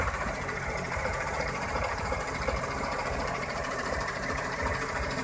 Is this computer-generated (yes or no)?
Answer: yes